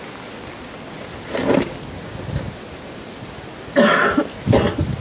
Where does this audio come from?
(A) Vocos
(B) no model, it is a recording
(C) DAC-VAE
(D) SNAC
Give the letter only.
B